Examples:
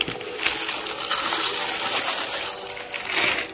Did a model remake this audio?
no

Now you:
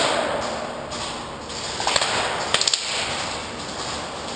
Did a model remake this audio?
no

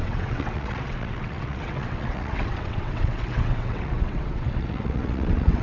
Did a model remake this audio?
yes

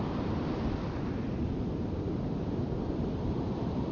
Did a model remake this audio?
no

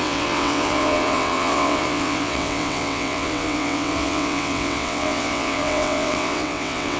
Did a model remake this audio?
yes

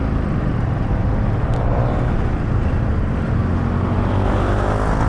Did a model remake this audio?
no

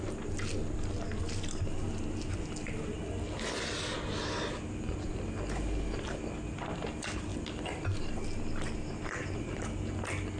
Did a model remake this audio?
no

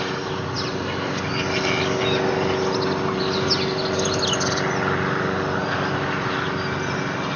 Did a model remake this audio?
no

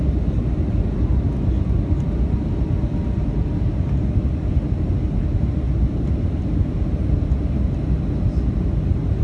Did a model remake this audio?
no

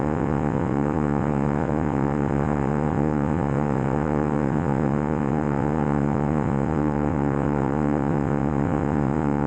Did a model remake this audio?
yes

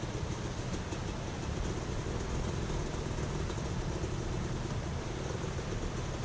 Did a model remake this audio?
no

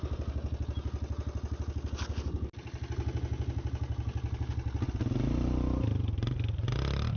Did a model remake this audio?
no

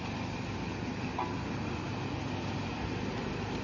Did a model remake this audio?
no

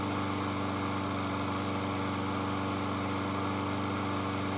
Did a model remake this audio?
no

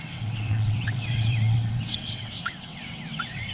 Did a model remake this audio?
yes